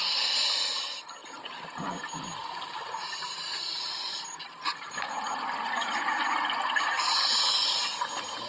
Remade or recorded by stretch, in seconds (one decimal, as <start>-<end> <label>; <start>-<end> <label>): 0.0-2.4 recorded; 2.4-5.1 remade; 5.1-8.5 recorded